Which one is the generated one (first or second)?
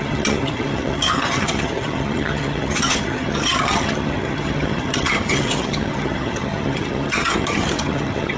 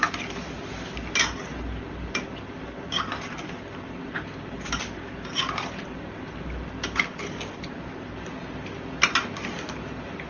first